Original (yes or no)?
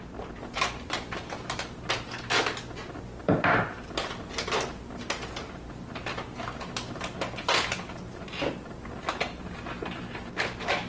yes